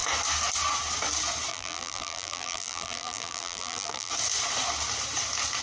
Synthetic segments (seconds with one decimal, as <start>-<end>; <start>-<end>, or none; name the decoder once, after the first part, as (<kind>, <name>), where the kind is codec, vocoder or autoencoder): 1.5-4.1 (vocoder, BigVGAN v2)